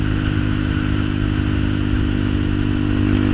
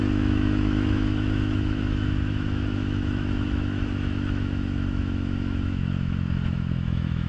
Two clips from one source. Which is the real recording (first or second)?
first